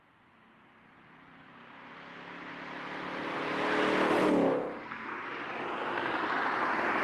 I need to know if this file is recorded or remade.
recorded